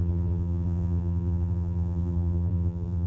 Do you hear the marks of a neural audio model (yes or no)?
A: yes